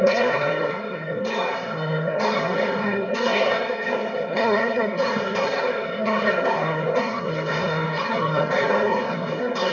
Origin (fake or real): fake